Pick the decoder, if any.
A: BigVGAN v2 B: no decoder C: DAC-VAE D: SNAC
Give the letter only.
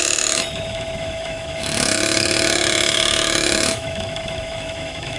C